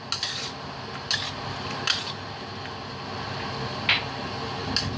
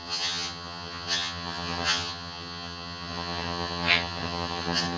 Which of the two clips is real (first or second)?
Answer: first